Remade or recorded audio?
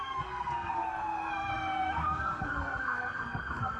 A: remade